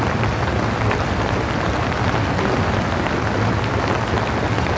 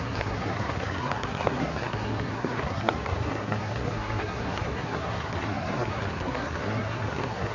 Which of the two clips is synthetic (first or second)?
second